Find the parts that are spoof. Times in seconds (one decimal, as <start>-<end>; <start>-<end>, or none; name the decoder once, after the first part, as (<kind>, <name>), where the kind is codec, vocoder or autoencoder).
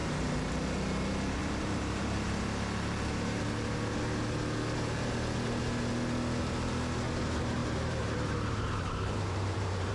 0.0-0.5 (vocoder, BigVGAN v2); 1.4-3.4; 7.6-9.9